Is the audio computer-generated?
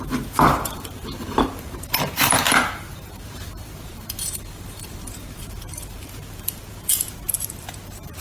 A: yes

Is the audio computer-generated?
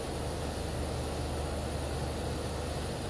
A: no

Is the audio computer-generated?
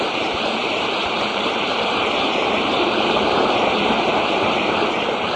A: yes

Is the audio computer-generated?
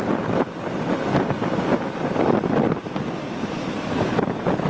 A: no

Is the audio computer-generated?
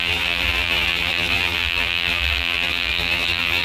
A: yes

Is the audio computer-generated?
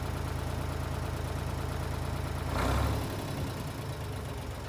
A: no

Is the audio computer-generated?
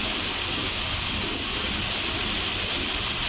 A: no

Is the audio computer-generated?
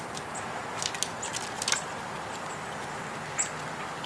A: no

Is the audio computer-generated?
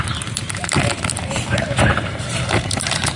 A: yes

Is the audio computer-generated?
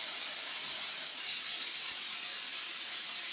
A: no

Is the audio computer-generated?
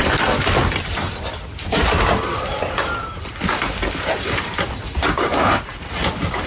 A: yes